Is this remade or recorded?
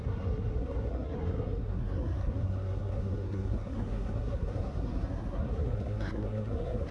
remade